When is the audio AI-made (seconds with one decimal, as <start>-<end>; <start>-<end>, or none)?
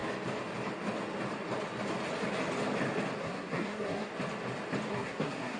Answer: 3.2-4.1; 4.9-5.6